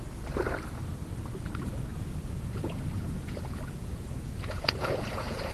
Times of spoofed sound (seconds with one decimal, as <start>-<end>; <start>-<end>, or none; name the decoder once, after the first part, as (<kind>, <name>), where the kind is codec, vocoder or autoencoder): 1.9-5.5 (vocoder, Vocos)